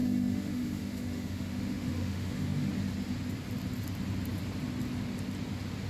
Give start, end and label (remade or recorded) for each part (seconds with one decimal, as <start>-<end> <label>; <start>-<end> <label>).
0.0-2.7 remade; 2.7-5.9 recorded